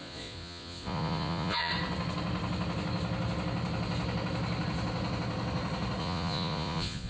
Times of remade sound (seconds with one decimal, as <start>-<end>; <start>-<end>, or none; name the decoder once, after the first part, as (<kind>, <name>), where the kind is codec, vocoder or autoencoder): 0.0-1.7 (vocoder, Vocos); 6.0-7.1